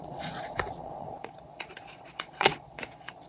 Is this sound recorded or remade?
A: remade